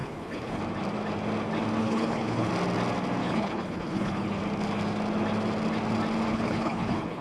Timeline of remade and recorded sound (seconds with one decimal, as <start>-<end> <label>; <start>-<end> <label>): 0.0-0.6 remade; 0.6-1.8 recorded; 1.8-2.5 remade; 2.5-3.2 recorded; 3.2-4.4 remade; 4.4-6.3 recorded; 6.3-7.2 remade